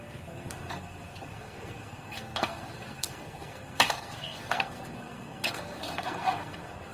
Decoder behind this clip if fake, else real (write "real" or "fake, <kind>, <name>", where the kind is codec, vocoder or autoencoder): fake, codec, SNAC